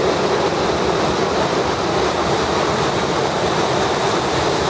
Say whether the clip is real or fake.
real